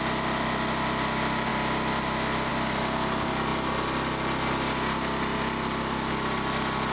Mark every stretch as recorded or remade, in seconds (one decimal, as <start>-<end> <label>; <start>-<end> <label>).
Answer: 0.0-6.9 recorded